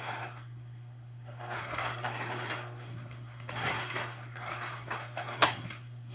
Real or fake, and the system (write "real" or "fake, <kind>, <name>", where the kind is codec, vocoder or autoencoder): fake, codec, SNAC